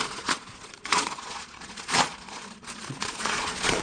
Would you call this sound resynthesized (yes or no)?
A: yes